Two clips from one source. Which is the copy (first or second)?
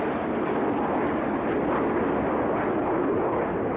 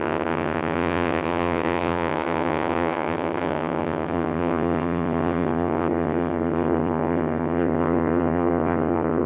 second